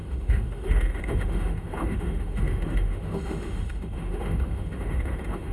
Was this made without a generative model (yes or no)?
no